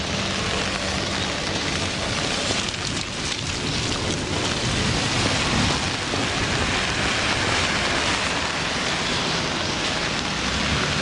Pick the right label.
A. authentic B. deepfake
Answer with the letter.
A